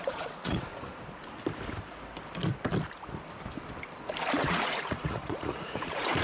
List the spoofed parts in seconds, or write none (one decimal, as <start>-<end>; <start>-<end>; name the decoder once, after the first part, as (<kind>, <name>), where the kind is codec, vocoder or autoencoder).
0.0-0.7 (vocoder, Vocos); 4.4-6.2